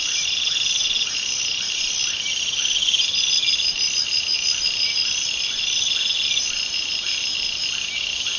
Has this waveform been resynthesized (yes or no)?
no